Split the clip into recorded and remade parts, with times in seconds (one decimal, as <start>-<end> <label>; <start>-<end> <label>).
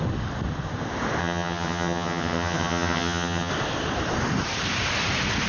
0.0-1.2 recorded; 1.2-3.5 remade; 3.5-5.5 recorded